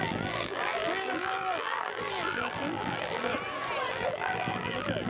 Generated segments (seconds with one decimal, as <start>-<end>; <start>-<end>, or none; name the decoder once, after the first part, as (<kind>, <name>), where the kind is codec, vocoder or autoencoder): 0.0-3.3 (vocoder, BigVGAN v2); 3.9-5.1